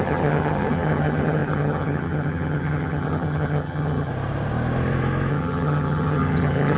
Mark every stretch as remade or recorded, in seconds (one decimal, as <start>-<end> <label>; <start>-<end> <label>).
0.0-4.1 remade; 4.1-5.3 recorded; 5.3-6.8 remade